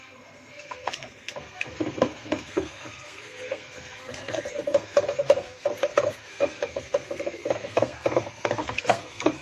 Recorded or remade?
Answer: remade